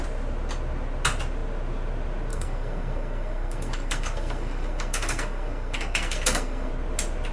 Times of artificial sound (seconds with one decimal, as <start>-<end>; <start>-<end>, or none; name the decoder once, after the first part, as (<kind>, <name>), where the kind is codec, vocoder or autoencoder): 2.3-6.7 (codec, SNAC)